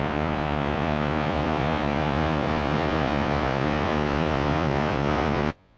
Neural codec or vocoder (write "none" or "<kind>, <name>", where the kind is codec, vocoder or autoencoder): vocoder, Vocos